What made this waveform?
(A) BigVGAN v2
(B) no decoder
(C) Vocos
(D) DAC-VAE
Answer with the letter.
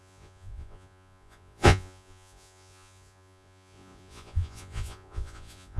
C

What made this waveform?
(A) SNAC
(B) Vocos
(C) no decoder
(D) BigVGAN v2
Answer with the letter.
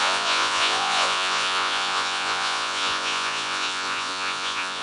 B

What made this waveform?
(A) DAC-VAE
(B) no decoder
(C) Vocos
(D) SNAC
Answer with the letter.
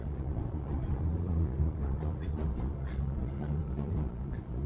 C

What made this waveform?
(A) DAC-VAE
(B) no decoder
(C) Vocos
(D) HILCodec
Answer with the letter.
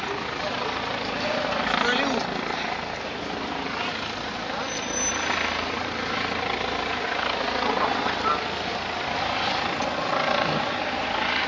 B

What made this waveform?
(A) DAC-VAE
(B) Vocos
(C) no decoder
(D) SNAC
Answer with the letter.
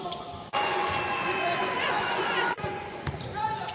B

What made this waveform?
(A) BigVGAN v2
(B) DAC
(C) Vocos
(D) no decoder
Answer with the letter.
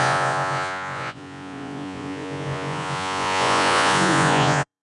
C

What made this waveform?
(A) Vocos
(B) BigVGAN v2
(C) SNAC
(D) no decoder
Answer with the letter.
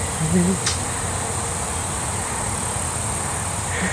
D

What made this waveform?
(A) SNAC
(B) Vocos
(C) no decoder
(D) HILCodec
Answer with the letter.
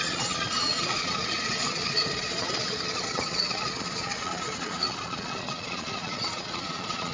B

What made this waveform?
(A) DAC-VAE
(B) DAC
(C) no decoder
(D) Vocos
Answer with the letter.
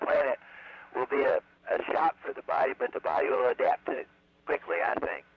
D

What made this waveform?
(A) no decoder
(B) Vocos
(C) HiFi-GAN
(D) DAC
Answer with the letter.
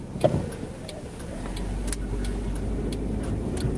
A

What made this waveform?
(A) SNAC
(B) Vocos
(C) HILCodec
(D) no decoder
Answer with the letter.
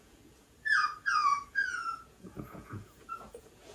B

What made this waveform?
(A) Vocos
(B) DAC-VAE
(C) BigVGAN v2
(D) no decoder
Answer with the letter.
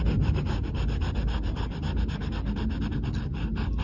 D